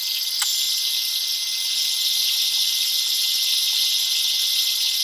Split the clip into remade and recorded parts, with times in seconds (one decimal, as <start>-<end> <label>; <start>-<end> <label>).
0.0-5.0 recorded